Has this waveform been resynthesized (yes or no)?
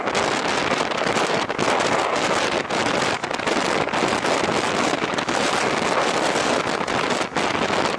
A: no